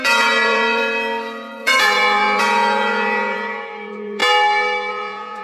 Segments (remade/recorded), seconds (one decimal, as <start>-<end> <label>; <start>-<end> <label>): 0.0-0.8 remade; 0.8-1.6 recorded; 1.6-4.2 remade; 4.2-4.9 recorded; 4.9-5.4 remade